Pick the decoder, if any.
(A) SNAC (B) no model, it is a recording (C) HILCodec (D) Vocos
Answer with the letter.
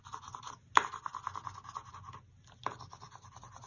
B